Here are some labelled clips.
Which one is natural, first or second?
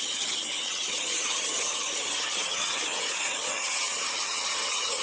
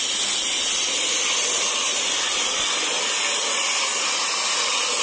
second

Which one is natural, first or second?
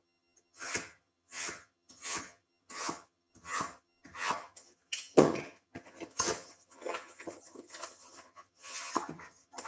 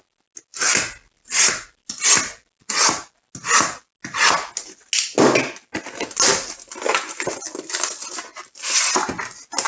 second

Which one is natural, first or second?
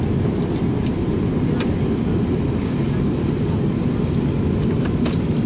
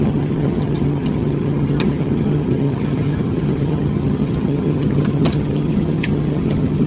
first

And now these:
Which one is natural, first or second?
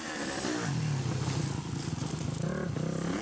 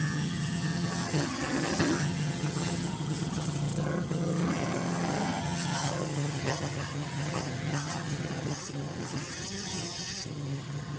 first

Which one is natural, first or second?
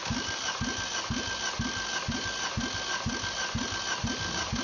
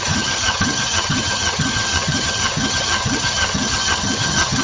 first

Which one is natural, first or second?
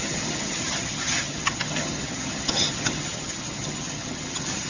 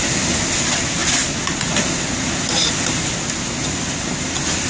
second